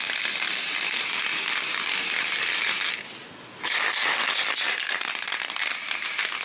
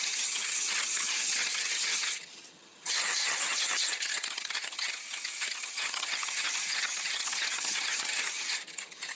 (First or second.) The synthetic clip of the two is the second